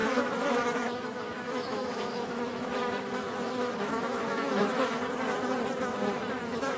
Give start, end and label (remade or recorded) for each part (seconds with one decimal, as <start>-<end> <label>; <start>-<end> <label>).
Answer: 0.0-5.0 remade; 5.0-6.3 recorded; 6.3-6.8 remade